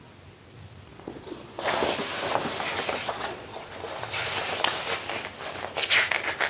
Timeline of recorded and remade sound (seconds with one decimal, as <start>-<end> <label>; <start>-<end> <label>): 0.0-0.9 recorded; 0.9-1.7 remade; 1.7-3.0 recorded; 3.0-3.7 remade; 3.7-6.5 recorded